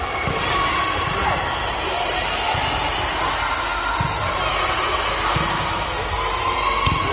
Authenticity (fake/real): real